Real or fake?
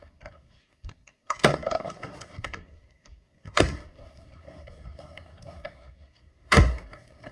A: fake